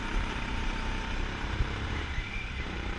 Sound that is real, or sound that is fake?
fake